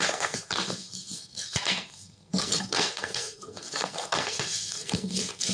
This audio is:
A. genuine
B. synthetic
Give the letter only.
B